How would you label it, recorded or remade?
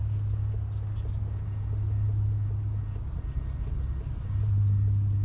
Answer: recorded